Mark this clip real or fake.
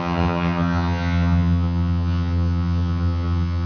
fake